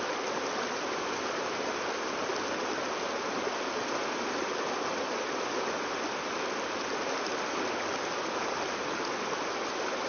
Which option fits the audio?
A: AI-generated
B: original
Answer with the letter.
B